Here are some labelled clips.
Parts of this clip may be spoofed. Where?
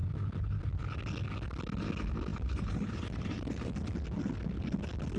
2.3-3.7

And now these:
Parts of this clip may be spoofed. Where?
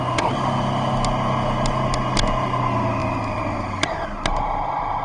3.0-4.0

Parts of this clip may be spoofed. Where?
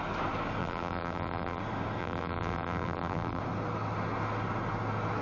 0.6-1.6; 2.0-3.4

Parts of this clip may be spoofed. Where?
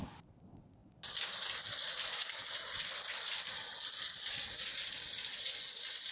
0.0-6.1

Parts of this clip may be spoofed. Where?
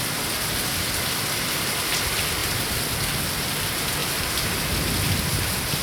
2.4-2.9; 4.0-4.6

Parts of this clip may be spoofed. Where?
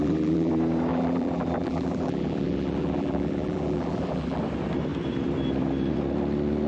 0.0-0.5; 0.9-4.4